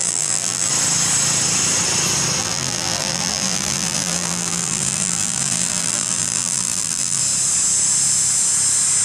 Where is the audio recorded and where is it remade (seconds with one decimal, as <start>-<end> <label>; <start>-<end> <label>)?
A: 0.0-0.7 remade; 0.7-2.4 recorded; 2.4-7.2 remade; 7.2-9.0 recorded